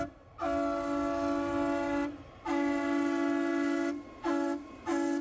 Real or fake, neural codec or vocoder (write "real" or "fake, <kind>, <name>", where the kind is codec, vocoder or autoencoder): real